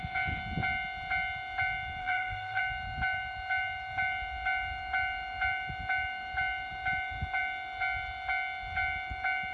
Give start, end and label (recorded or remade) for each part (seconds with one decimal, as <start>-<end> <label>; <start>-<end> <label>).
0.0-2.0 recorded; 2.0-2.6 remade; 2.6-9.5 recorded

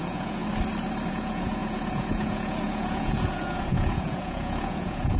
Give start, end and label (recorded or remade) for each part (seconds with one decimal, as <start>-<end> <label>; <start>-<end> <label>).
0.0-0.4 remade; 0.4-1.1 recorded; 1.1-5.2 remade

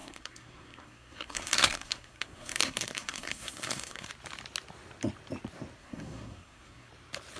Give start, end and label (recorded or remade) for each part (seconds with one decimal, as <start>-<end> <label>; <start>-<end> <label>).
0.0-4.1 remade; 4.1-5.8 recorded; 5.8-6.9 remade; 6.9-7.4 recorded

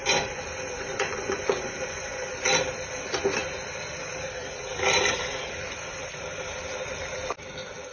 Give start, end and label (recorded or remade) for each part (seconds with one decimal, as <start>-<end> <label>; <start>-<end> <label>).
0.0-2.3 remade; 2.3-7.9 recorded

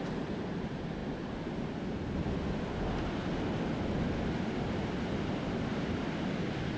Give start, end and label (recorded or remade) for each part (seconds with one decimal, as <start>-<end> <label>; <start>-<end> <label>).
0.0-1.0 remade; 1.0-5.1 recorded; 5.1-6.8 remade

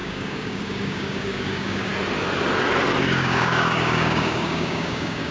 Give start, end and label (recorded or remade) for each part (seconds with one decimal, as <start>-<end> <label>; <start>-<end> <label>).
0.0-1.9 remade; 1.9-3.0 recorded; 3.0-5.3 remade

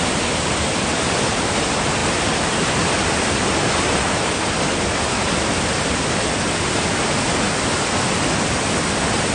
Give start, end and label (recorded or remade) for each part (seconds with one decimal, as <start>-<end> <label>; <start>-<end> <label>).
0.0-9.3 recorded